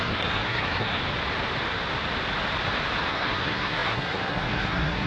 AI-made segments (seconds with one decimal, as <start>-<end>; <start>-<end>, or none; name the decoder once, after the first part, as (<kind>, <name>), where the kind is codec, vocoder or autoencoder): 0.0-1.0 (codec, SNAC); 3.1-5.1

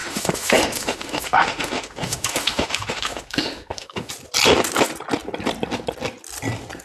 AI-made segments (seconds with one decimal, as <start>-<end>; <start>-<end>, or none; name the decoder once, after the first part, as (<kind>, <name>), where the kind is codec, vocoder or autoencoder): 0.0-4.1 (autoencoder, DAC-VAE)

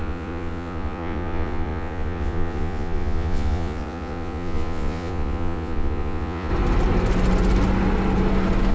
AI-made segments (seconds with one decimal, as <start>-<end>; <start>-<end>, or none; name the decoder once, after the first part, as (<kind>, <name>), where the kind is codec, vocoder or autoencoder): 0.0-6.5 (vocoder, Vocos)